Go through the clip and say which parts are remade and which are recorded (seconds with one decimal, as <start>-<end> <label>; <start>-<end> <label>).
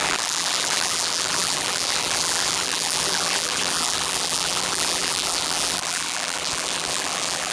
0.0-7.5 remade